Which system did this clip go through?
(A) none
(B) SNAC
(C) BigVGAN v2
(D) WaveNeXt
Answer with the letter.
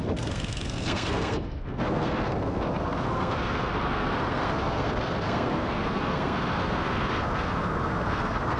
B